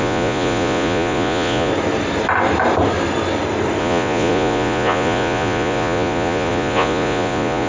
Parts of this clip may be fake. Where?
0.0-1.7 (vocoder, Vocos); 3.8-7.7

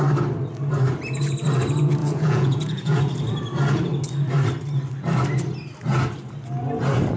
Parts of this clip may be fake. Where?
2.0-3.0 (vocoder, Vocos)

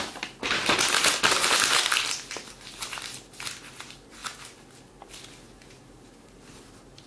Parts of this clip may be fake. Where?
none